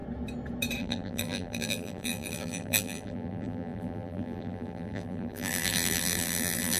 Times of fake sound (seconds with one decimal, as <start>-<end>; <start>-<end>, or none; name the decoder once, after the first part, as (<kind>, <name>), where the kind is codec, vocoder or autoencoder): 0.8-6.8 (vocoder, BigVGAN v2)